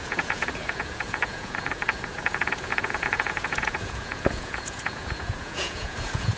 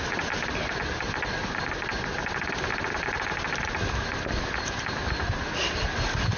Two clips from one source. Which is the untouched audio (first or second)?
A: second